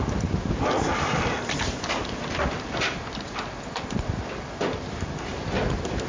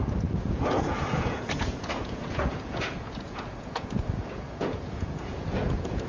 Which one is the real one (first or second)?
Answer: first